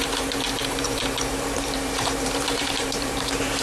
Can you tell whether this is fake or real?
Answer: fake